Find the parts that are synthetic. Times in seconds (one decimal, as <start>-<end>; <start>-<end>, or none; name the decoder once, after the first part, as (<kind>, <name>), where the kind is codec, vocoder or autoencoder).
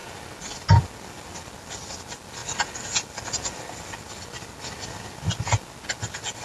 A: none